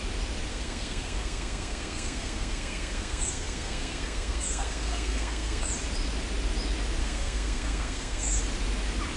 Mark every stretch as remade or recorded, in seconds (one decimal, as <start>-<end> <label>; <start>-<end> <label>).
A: 0.0-0.5 recorded; 0.5-5.7 remade; 5.7-7.0 recorded; 7.0-8.4 remade; 8.4-9.2 recorded